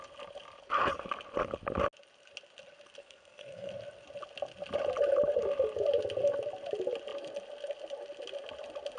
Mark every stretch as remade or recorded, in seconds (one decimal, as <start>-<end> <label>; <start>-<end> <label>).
0.0-3.0 recorded; 3.0-3.7 remade; 3.7-9.0 recorded